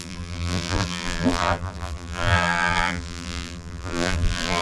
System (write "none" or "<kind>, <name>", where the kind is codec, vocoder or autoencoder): vocoder, BigVGAN v2